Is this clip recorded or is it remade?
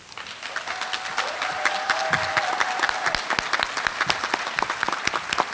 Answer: recorded